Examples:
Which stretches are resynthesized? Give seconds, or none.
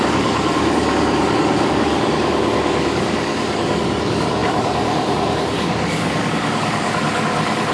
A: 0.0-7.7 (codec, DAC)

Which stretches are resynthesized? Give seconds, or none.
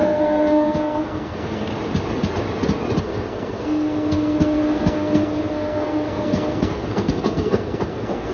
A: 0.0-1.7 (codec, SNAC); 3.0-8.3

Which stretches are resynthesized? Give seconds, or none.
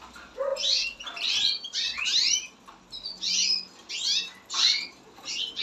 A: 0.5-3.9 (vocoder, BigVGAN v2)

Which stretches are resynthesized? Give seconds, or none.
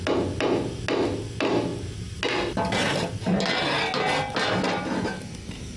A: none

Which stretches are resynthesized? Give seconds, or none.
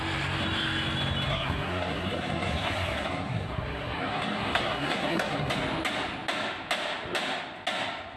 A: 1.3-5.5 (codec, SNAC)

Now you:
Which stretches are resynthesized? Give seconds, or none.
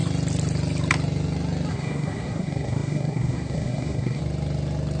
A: 1.7-4.2 (codec, SNAC)